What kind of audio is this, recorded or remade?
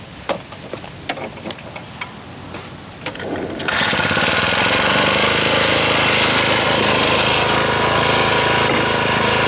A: recorded